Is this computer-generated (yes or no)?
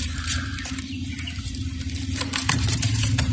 yes